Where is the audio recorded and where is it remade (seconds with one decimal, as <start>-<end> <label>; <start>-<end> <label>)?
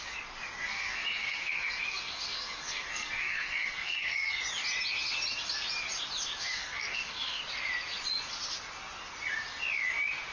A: 0.0-0.6 recorded; 0.6-4.4 remade; 4.4-6.4 recorded; 6.4-7.4 remade; 7.4-10.3 recorded